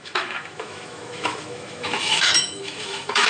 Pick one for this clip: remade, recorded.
remade